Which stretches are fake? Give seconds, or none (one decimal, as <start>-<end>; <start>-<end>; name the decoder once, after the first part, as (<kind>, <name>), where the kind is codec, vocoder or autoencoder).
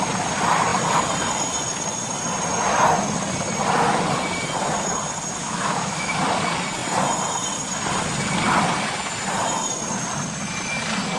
5.4-6.2 (autoencoder, DAC-VAE)